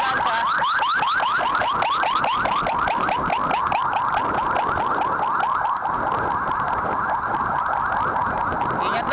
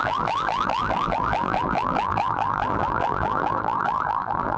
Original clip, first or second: first